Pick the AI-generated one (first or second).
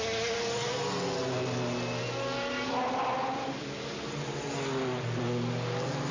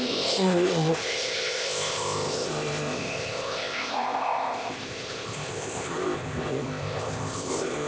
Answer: second